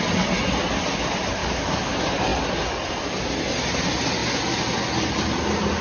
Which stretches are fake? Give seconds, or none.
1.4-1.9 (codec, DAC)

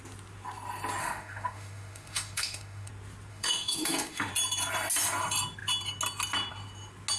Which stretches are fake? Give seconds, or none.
1.0-2.9 (autoencoder, DAC-VAE); 3.3-4.3

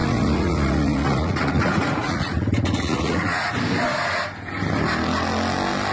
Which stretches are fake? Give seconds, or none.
0.0-3.5 (vocoder, Vocos)